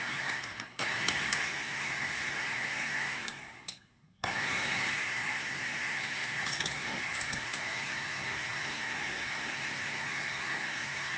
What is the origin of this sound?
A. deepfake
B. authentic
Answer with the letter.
A